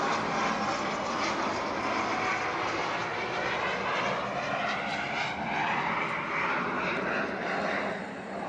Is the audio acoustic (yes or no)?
yes